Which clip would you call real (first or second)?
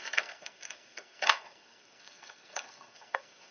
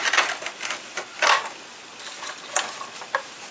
second